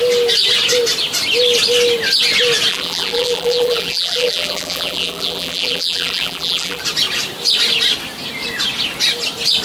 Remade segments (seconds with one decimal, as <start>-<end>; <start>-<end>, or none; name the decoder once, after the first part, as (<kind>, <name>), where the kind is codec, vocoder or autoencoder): 2.7-6.8 (vocoder, BigVGAN v2)